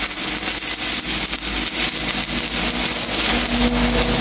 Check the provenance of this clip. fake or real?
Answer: real